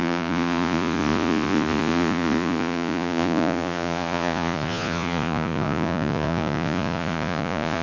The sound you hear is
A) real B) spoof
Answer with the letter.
B